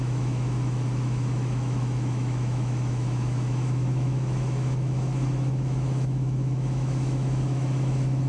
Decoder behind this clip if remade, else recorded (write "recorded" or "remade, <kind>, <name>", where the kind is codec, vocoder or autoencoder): remade, autoencoder, DAC-VAE